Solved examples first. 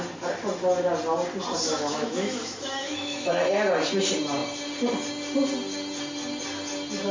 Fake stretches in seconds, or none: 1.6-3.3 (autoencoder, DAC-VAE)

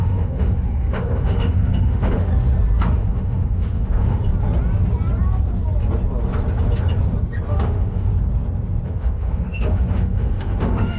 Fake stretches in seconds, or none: 0.0-2.3 (autoencoder, DAC-VAE); 2.8-4.2; 7.5-8.1; 8.9-11.0

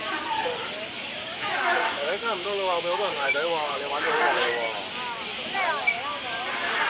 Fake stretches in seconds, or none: 1.3-4.5 (autoencoder, DAC-VAE)

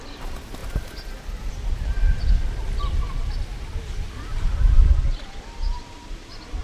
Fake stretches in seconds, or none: none